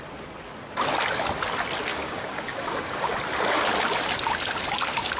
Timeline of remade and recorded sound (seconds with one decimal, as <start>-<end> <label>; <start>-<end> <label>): 0.0-1.9 recorded; 1.9-3.1 remade; 3.1-5.2 recorded